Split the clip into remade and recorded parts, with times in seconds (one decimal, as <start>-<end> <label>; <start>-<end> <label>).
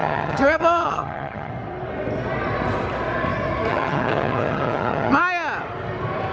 0.0-1.5 remade; 1.5-3.7 recorded; 3.7-5.2 remade; 5.2-6.3 recorded